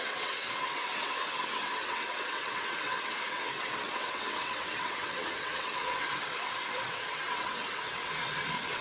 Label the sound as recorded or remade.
remade